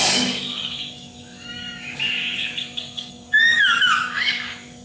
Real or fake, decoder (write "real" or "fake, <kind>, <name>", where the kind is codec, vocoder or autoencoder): fake, codec, DAC